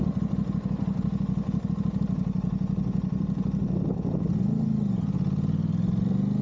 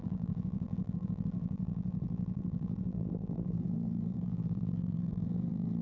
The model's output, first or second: second